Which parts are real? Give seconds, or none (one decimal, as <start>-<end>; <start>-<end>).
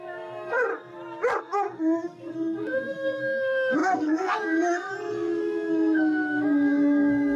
0.7-1.4